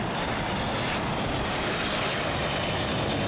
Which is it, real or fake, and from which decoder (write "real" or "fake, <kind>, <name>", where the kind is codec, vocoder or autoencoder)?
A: real